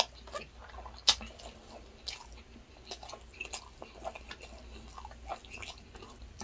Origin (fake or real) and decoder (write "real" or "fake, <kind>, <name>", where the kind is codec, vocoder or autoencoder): real